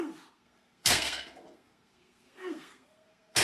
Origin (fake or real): fake